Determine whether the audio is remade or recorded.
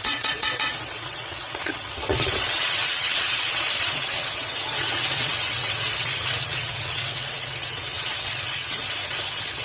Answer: remade